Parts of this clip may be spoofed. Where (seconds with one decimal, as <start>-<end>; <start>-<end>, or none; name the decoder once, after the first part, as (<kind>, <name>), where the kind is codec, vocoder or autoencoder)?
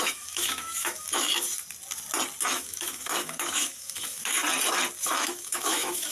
0.0-1.5 (autoencoder, DAC-VAE); 2.5-4.4; 5.0-6.1